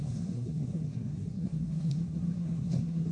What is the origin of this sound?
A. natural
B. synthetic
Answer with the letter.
B